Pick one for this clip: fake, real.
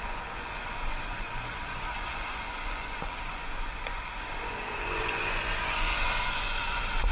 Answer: fake